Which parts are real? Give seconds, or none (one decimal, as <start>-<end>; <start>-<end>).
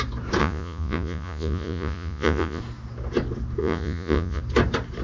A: 0.0-0.4; 2.6-3.6; 4.4-5.0